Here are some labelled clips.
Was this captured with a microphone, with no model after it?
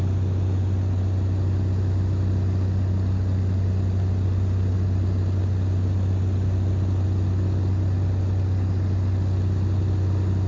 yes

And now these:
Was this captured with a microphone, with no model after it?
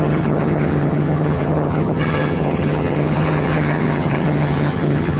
no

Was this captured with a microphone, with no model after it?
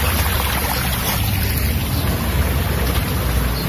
yes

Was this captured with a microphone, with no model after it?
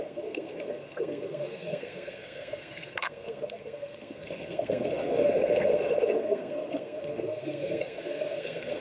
no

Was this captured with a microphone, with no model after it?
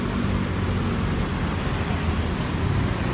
yes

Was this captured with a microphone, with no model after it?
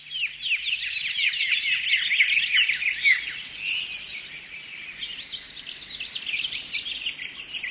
yes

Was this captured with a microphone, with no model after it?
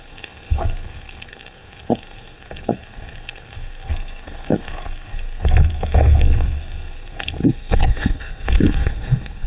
no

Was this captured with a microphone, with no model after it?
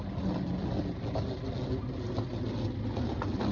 yes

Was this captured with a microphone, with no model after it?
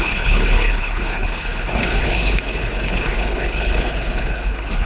no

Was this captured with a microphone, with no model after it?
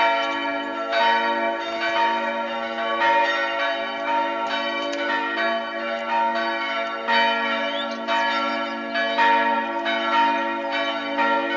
yes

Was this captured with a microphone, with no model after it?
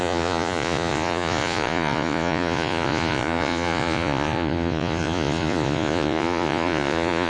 no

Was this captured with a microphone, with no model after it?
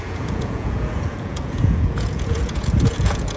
no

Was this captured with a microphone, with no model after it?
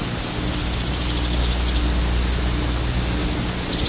yes